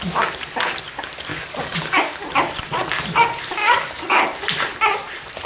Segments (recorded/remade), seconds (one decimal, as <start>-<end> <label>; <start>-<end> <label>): 0.0-1.3 recorded; 1.3-2.2 remade; 2.2-3.6 recorded; 3.6-4.2 remade; 4.2-5.5 recorded